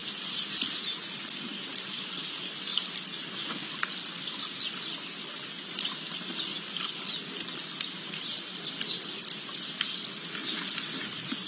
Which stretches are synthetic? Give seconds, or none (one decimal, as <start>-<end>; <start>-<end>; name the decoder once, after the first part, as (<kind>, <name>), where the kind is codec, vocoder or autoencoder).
none